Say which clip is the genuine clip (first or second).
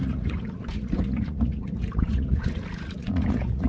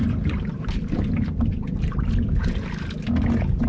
second